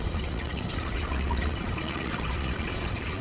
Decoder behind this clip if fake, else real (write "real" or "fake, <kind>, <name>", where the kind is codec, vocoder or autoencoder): fake, vocoder, Vocos